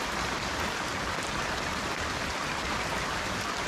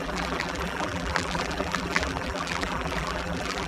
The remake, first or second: second